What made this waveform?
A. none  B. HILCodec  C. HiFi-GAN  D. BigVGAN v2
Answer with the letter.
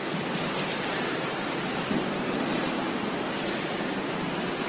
D